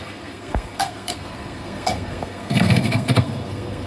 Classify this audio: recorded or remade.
remade